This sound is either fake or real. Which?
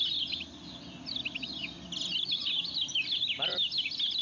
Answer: real